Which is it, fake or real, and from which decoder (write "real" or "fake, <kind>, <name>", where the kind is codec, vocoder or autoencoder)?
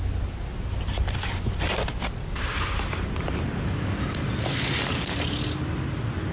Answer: real